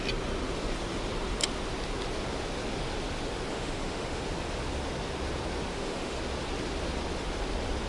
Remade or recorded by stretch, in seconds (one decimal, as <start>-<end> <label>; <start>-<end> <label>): 0.0-3.5 recorded; 3.5-4.2 remade; 4.2-5.7 recorded; 5.7-6.2 remade; 6.2-7.9 recorded